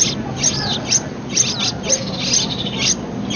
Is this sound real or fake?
real